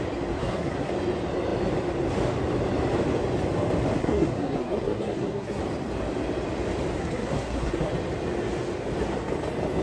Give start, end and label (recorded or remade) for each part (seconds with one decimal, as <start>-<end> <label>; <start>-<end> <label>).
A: 0.0-0.4 recorded; 0.4-0.9 remade; 0.9-4.0 recorded; 4.0-5.6 remade; 5.6-7.0 recorded; 7.0-7.9 remade; 7.9-9.8 recorded